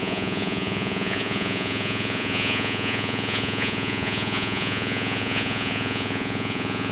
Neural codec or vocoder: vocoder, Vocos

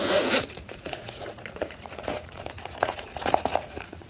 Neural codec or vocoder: vocoder, Vocos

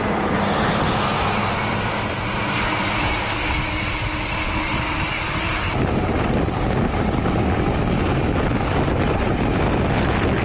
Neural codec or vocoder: none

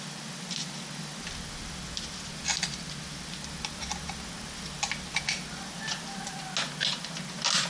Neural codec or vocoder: none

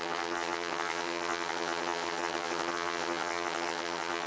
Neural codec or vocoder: vocoder, HiFi-GAN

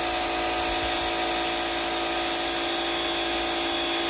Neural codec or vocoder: none